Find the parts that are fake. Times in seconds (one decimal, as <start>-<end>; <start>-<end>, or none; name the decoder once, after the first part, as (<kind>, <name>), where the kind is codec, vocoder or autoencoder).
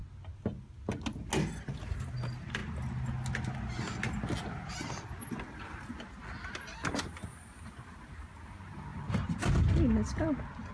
none